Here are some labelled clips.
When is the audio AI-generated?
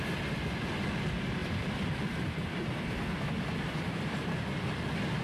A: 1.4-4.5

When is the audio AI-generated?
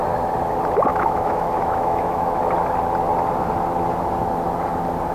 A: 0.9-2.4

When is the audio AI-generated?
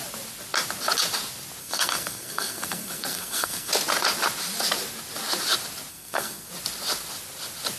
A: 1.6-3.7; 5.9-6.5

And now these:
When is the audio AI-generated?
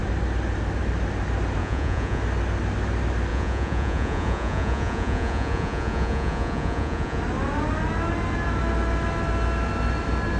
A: 1.6-2.2; 3.3-7.2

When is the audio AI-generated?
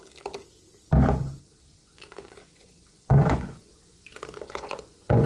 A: 1.8-5.3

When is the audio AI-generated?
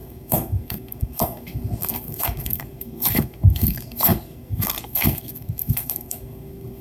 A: 0.0-6.8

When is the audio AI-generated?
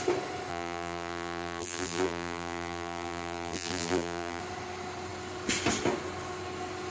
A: 0.5-4.4